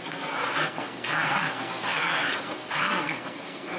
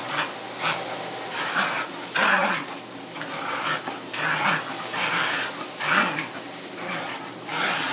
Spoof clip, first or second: first